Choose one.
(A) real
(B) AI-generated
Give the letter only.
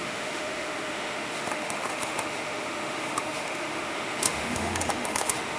B